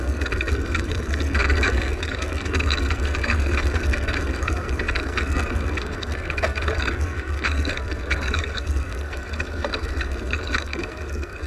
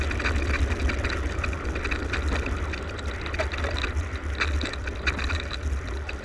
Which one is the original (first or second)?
second